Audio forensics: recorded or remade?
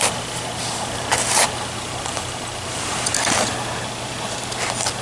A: recorded